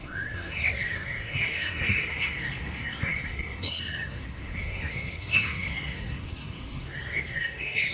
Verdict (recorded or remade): remade